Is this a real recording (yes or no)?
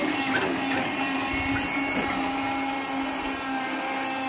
yes